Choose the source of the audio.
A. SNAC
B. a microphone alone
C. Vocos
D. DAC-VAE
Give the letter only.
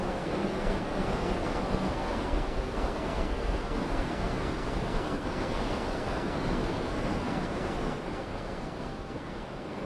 A